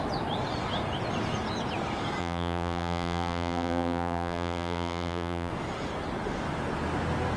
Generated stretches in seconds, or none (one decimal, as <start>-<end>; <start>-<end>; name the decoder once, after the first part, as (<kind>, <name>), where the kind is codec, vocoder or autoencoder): 2.2-5.5 (vocoder, BigVGAN v2)